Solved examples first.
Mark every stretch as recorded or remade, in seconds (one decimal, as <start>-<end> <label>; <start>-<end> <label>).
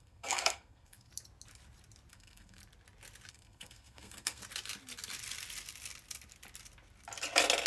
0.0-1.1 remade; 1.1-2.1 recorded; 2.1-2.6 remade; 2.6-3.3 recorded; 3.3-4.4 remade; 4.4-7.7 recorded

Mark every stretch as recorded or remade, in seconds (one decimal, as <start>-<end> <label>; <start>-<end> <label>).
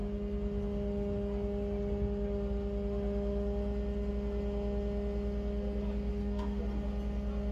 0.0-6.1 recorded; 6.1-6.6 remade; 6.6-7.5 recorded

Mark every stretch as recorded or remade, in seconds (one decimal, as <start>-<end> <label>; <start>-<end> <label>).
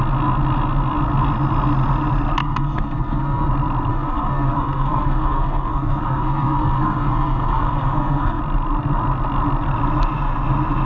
0.0-2.4 recorded; 2.4-3.5 remade; 3.5-3.9 recorded; 3.9-8.4 remade; 8.4-10.9 recorded